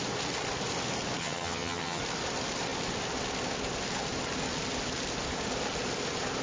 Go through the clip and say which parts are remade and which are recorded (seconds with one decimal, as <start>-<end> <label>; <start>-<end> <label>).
0.0-1.2 recorded; 1.2-2.0 remade; 2.0-6.4 recorded